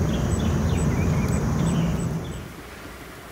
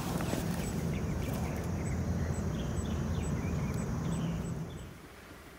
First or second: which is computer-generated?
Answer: second